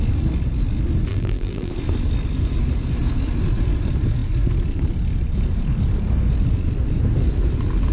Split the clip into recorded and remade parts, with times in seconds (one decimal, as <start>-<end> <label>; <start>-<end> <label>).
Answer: 0.0-1.1 recorded; 1.1-1.7 remade; 1.7-7.9 recorded